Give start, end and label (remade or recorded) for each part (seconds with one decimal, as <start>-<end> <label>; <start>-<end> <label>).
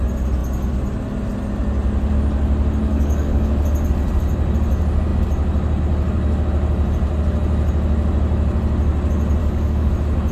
0.0-2.9 recorded; 2.9-3.5 remade; 3.5-9.4 recorded; 9.4-9.9 remade; 9.9-10.3 recorded